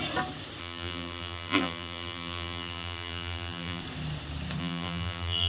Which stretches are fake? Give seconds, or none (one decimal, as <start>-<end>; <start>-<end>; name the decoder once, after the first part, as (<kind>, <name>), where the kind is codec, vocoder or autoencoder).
0.6-3.8 (vocoder, BigVGAN v2); 4.6-5.5